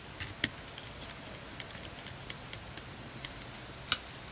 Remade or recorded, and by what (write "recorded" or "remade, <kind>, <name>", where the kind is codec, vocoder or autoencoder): recorded